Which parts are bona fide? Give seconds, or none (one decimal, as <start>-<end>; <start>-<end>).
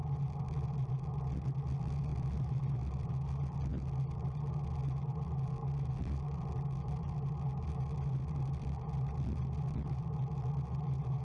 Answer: 0.9-2.1; 3.1-3.7; 4.6-11.2